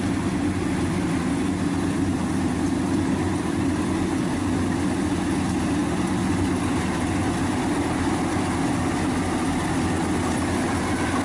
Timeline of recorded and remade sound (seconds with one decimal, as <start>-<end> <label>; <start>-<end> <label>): 0.0-11.2 recorded